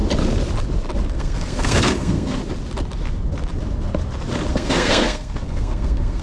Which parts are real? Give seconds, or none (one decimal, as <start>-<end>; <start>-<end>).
0.0-1.1; 2.4-4.5